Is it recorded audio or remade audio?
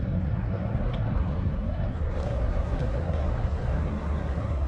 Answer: remade